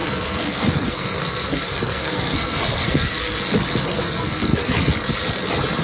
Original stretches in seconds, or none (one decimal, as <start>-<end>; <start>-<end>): 3.4-3.9; 4.8-5.8